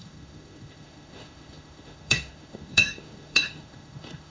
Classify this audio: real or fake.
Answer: fake